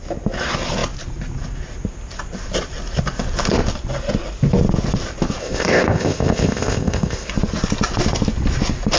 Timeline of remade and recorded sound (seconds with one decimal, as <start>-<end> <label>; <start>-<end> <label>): 0.0-5.4 recorded; 5.4-7.3 remade; 7.3-9.0 recorded